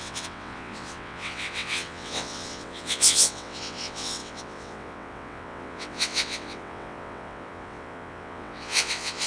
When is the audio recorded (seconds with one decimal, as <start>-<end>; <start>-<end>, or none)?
none